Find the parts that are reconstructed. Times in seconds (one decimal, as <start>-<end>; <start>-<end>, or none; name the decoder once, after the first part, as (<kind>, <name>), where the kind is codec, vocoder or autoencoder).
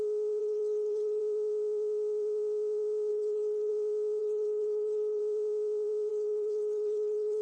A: 0.4-1.2 (codec, HILCodec); 3.1-3.7; 4.2-5.2; 6.1-7.4